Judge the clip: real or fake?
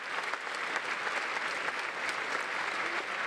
real